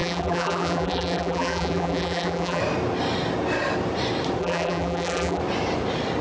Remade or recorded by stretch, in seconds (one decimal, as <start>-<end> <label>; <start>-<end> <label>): 0.0-2.6 remade; 2.6-4.4 recorded; 4.4-5.4 remade; 5.4-6.2 recorded